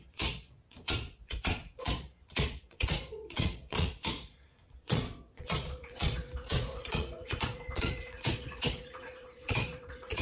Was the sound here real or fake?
fake